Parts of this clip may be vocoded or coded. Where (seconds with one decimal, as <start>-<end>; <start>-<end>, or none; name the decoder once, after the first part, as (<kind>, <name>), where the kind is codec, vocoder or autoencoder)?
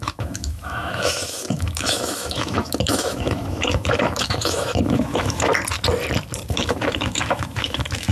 0.0-5.5 (autoencoder, DAC-VAE); 6.5-8.1